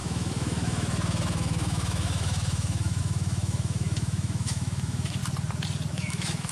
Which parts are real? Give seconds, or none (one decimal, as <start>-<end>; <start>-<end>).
5.2-5.9